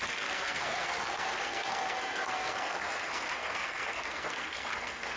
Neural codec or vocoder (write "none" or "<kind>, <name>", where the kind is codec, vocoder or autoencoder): codec, SNAC